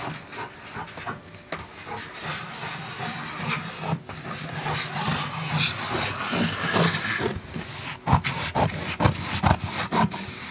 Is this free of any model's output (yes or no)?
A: yes